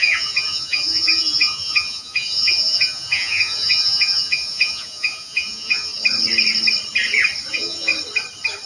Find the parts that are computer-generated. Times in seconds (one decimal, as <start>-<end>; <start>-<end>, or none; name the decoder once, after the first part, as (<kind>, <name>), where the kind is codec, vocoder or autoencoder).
0.0-5.9 (vocoder, Vocos); 7.5-7.9